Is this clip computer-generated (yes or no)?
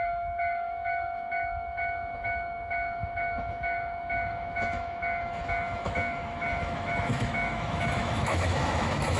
yes